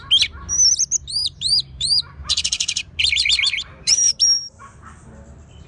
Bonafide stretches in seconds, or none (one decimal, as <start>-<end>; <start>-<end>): 0.0-1.2; 4.6-5.7